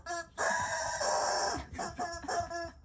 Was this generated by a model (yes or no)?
no